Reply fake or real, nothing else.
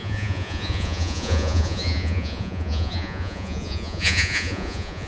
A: fake